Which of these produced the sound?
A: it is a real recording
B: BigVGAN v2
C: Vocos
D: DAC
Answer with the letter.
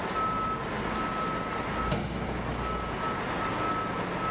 A